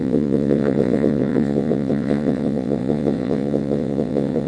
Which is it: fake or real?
fake